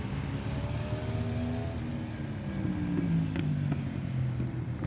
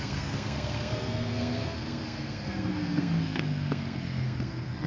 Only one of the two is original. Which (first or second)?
first